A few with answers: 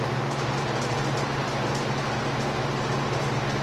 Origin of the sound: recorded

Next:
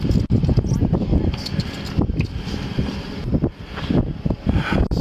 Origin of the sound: recorded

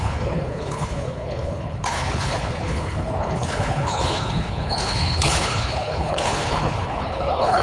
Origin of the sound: remade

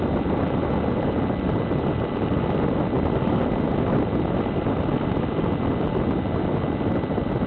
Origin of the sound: recorded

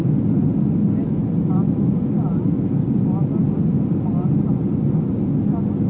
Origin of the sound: recorded